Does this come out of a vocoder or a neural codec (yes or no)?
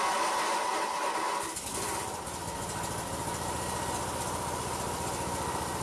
no